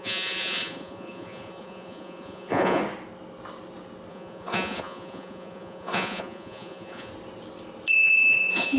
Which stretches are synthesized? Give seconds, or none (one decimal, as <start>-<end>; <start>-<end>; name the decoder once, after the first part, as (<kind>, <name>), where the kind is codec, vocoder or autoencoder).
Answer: 0.0-2.8 (vocoder, Vocos); 4.1-7.1; 7.9-8.8